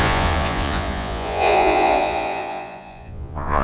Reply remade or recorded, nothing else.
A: remade